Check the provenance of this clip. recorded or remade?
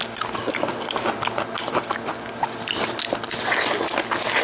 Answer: recorded